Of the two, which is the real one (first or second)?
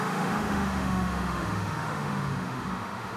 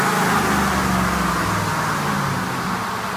second